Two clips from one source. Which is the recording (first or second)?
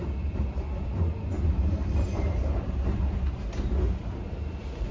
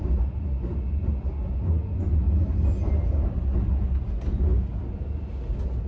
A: second